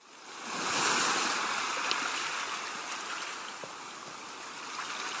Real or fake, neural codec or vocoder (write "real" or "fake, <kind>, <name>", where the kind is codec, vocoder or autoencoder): real